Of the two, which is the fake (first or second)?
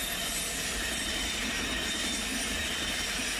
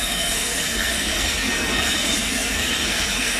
second